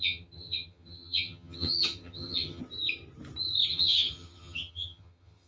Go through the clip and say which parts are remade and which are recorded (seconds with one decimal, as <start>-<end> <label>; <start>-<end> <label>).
0.0-2.6 remade; 2.6-3.7 recorded; 3.7-5.5 remade